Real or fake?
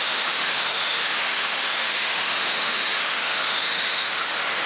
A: fake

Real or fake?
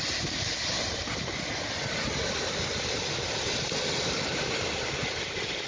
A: real